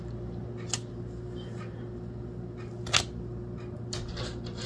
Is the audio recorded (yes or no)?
yes